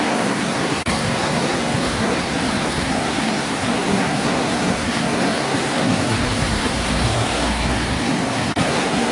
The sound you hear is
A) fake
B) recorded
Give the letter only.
A